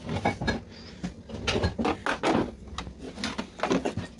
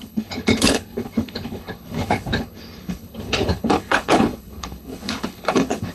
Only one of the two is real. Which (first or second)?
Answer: first